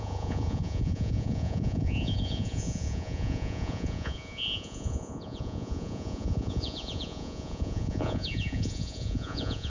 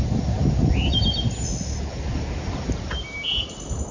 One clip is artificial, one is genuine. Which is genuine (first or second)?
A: second